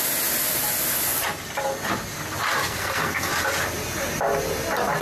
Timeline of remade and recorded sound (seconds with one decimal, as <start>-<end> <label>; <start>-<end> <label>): 0.0-2.6 recorded; 2.6-3.3 remade; 3.3-5.0 recorded